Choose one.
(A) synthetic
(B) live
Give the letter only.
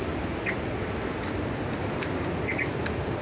B